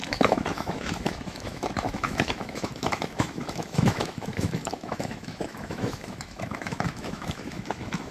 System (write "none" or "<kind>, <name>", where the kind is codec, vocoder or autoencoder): autoencoder, DAC-VAE